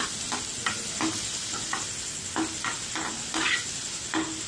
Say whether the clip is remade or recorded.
recorded